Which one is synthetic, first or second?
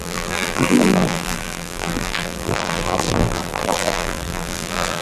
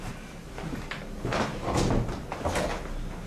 first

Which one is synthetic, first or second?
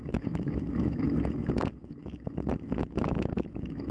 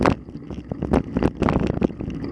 first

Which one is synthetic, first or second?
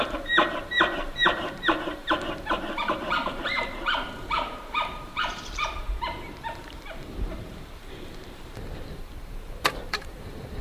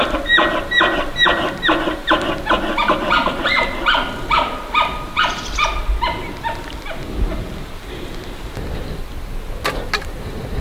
first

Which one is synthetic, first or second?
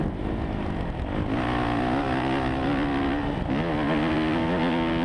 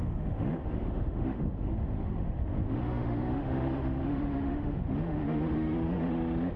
second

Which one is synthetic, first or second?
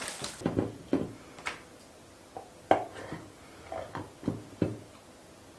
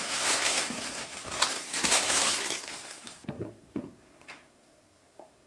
second